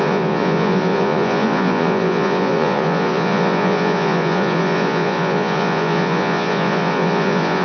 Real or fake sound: fake